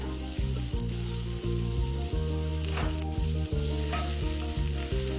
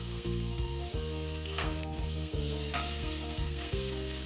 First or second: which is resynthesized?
second